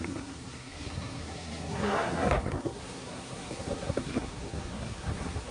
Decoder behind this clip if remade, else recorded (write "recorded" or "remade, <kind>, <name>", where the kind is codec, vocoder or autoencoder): remade, codec, SNAC